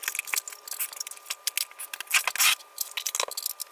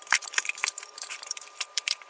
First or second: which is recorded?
first